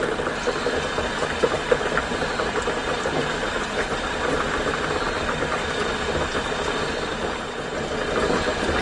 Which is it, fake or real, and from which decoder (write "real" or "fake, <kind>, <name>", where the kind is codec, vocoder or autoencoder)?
fake, vocoder, BigVGAN v2